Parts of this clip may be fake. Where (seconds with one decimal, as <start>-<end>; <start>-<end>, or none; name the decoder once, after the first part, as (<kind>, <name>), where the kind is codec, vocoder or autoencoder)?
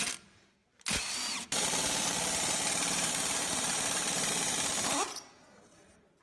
0.6-4.3 (vocoder, BigVGAN v2)